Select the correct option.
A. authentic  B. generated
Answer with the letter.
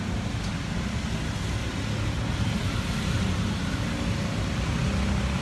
A